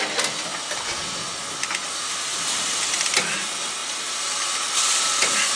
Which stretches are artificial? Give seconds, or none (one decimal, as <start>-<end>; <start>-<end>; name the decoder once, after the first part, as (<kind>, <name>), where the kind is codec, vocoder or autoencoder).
2.3-3.2 (vocoder, BigVGAN v2); 3.8-5.6